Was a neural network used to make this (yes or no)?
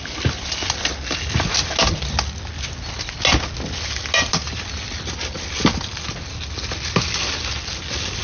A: no